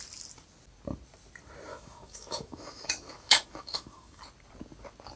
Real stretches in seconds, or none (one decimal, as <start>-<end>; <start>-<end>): 0.0-1.7; 4.2-5.2